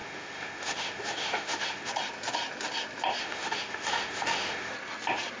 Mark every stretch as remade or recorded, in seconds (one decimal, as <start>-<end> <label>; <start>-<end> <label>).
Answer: 0.0-1.9 remade; 1.9-3.2 recorded; 3.2-4.7 remade; 4.7-5.4 recorded